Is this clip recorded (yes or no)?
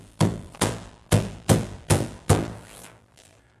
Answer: no